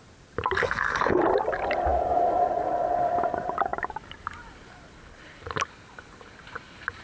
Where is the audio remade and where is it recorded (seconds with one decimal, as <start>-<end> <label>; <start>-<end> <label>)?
0.0-0.6 recorded; 0.6-1.2 remade; 1.2-7.0 recorded